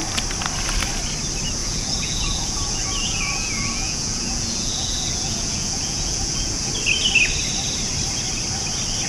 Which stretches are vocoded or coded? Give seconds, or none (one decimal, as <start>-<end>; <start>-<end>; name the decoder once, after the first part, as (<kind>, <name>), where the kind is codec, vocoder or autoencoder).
1.6-6.7 (vocoder, Vocos)